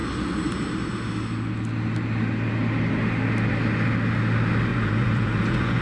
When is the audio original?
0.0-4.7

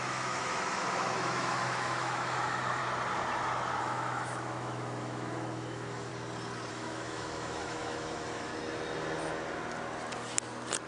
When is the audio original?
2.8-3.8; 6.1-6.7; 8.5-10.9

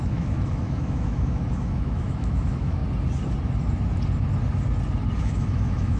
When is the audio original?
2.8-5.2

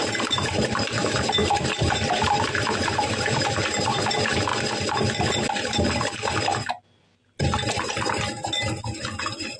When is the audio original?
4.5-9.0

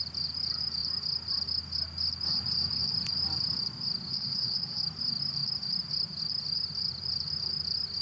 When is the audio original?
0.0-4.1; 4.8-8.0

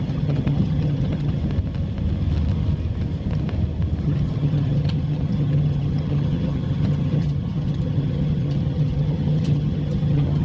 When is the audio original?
1.4-4.0

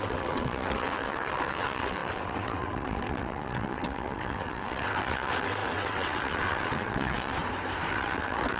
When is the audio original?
7.4-7.9